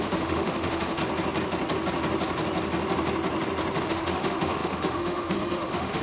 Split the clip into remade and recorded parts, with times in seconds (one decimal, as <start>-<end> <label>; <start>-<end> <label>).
0.0-1.0 remade; 1.0-3.8 recorded; 3.8-6.0 remade